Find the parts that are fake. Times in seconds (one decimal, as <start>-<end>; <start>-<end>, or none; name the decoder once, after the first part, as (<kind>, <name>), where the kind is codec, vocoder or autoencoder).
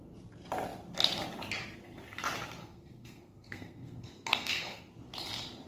2.6-4.9 (codec, SNAC)